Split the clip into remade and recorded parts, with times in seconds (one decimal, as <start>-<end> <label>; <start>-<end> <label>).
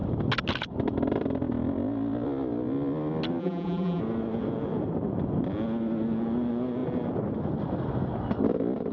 0.0-3.4 recorded; 3.4-4.0 remade; 4.0-8.9 recorded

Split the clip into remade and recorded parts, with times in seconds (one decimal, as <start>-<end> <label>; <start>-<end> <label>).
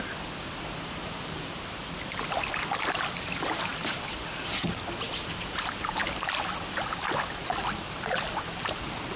0.0-9.2 recorded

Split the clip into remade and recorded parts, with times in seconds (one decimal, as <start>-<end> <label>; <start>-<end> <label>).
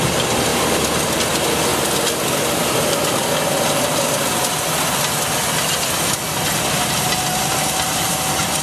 0.0-8.6 recorded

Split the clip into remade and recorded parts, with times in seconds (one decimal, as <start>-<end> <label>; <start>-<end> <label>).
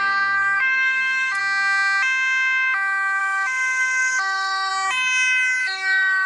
0.0-0.6 recorded; 0.6-1.4 remade; 1.4-3.2 recorded; 3.2-4.7 remade; 4.7-5.6 recorded; 5.6-6.3 remade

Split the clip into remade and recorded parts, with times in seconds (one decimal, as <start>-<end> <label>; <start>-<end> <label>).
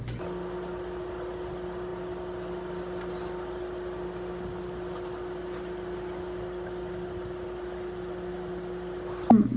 0.0-9.6 recorded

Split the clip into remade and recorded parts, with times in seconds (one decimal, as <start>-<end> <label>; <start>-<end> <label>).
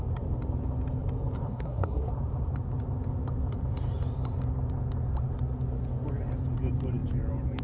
0.0-1.5 recorded; 1.5-2.1 remade; 2.1-7.6 recorded